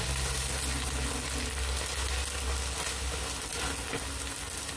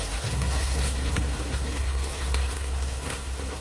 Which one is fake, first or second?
second